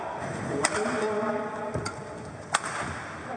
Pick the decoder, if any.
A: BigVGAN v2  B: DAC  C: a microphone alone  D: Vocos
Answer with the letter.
C